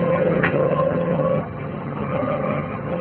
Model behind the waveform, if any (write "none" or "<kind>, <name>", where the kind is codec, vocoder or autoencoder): vocoder, HiFi-GAN